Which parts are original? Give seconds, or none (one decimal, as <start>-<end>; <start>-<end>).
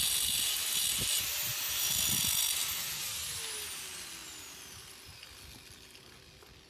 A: 0.0-6.7